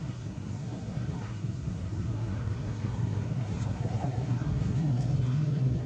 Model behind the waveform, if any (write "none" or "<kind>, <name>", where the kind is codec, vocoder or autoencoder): codec, SNAC